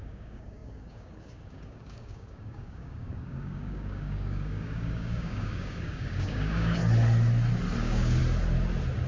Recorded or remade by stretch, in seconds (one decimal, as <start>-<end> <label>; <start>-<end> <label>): 0.0-6.8 remade; 6.8-7.8 recorded; 7.8-8.2 remade; 8.2-9.1 recorded